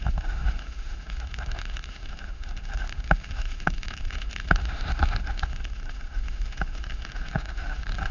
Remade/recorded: remade